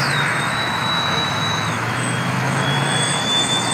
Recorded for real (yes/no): no